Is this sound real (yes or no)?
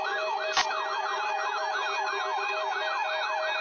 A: yes